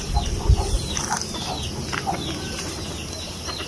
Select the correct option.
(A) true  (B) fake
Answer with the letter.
A